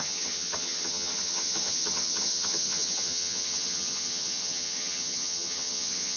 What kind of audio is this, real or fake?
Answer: fake